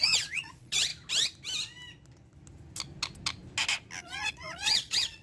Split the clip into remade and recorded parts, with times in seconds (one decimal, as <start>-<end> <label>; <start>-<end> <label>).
0.0-0.9 remade; 0.9-4.0 recorded; 4.0-5.2 remade